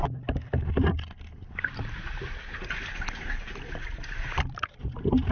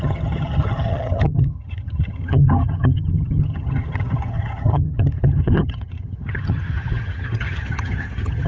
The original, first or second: first